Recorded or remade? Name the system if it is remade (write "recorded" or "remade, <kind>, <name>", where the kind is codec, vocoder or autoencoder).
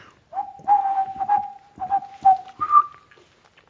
recorded